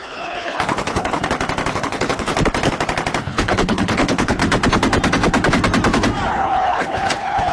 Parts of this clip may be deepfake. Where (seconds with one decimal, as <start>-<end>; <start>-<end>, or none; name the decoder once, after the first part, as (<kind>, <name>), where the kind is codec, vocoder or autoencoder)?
0.0-1.2 (codec, HILCodec); 1.7-2.3; 3.2-4.4; 6.3-7.5